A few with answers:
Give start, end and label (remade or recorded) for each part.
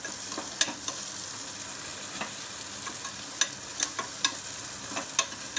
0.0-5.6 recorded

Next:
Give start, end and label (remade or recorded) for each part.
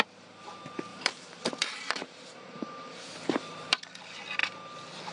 0.0-0.9 recorded; 0.9-4.0 remade; 4.0-5.1 recorded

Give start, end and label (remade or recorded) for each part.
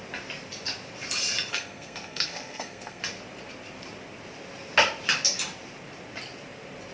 0.0-1.5 recorded; 1.5-3.0 remade; 3.0-6.9 recorded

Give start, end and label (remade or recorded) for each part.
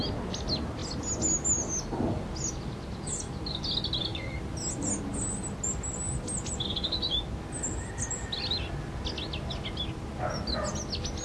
0.0-11.2 recorded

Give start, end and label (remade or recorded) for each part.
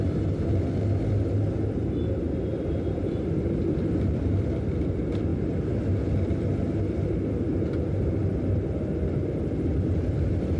0.0-2.5 recorded; 2.5-4.7 remade; 4.7-9.7 recorded; 9.7-10.6 remade